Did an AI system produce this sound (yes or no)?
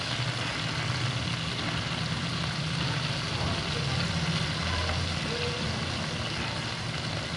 no